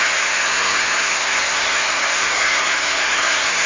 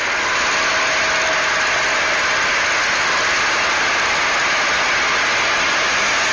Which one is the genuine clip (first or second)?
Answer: second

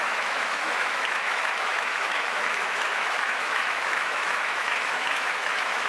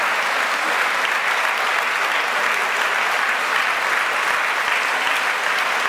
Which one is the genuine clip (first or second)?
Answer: second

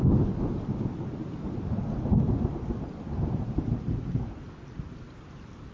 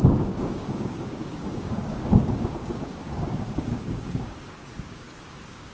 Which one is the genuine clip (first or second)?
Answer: first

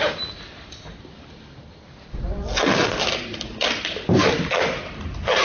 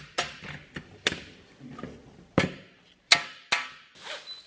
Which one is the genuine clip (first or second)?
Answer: second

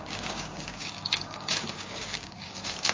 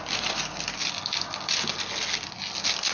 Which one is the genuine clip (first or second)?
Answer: second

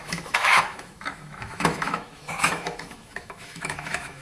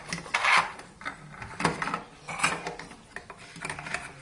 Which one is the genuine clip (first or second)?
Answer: second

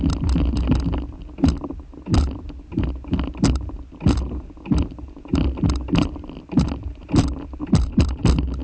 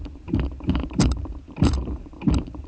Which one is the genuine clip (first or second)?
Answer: first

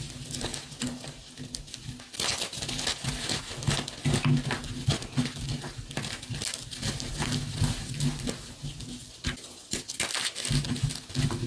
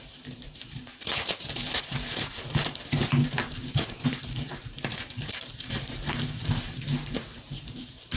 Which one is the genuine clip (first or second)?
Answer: first